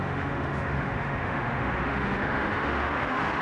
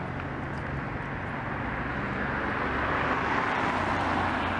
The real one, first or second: second